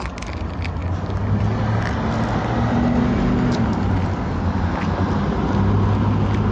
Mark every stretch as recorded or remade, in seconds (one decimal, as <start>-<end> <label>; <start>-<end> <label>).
0.0-6.5 recorded